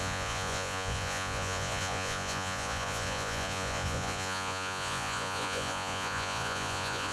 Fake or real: fake